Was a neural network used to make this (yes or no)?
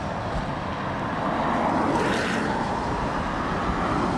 no